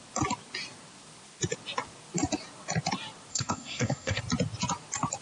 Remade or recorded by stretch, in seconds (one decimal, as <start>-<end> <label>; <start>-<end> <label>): 0.0-3.3 recorded; 3.3-4.2 remade; 4.2-5.2 recorded

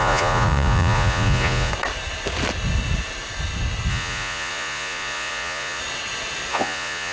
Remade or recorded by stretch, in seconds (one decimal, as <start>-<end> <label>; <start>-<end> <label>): 0.0-1.7 remade; 1.7-3.9 recorded; 3.9-5.8 remade; 5.8-6.5 recorded; 6.5-7.1 remade

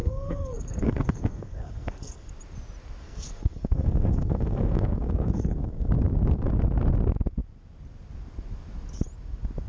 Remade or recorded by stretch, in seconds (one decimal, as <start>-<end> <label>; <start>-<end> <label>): 0.0-2.3 remade; 2.3-3.0 recorded; 3.0-5.9 remade; 5.9-9.7 recorded